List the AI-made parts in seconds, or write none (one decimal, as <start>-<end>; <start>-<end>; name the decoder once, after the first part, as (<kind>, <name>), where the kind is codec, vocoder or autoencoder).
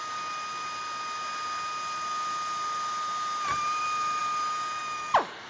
none